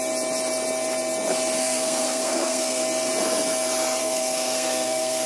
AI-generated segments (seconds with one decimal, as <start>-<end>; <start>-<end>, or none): 1.6-2.8; 4.0-5.3